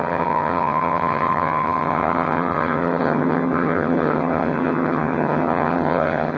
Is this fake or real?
fake